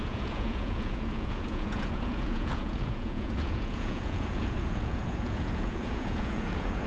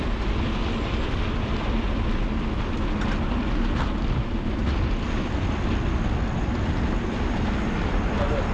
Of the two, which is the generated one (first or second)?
first